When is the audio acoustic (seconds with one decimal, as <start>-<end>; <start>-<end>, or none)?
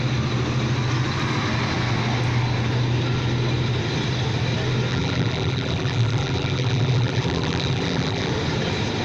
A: 0.0-4.9; 8.3-9.0